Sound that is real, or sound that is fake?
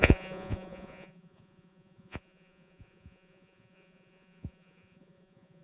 fake